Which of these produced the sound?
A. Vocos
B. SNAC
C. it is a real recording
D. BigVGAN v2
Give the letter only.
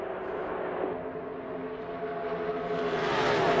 C